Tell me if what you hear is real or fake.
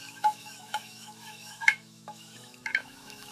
fake